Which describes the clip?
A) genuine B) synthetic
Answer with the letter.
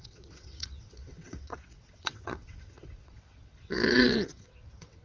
B